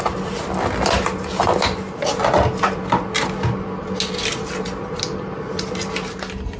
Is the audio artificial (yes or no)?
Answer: no